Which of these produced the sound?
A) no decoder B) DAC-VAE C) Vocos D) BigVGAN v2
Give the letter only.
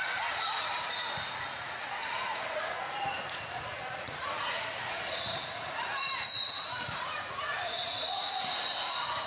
C